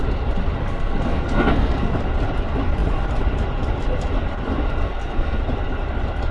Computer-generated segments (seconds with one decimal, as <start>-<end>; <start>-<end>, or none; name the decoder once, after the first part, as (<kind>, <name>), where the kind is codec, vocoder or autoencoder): 0.6-1.9 (codec, SNAC); 4.8-5.4